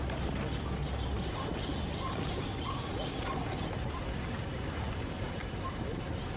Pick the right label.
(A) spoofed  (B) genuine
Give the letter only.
B